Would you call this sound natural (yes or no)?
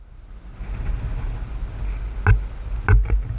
yes